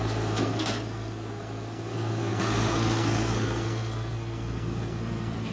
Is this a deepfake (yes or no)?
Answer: yes